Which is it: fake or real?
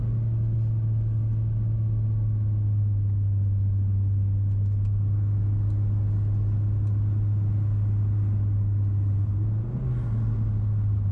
real